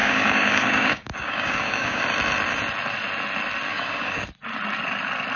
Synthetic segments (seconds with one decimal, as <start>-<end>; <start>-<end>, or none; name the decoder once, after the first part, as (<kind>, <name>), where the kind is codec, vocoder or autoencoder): 0.0-2.0 (codec, DAC); 3.7-4.3